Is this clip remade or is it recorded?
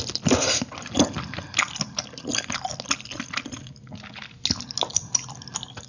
recorded